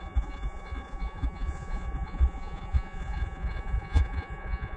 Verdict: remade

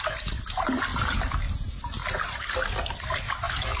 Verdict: recorded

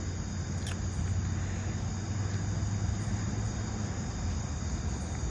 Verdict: recorded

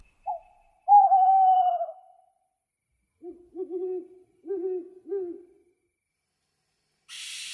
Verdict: recorded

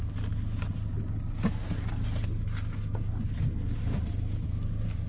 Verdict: recorded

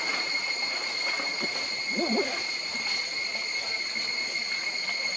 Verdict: recorded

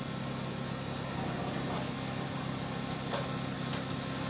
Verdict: recorded